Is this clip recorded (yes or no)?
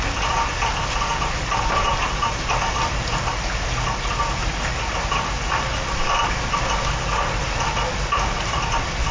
yes